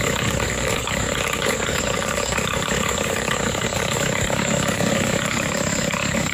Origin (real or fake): fake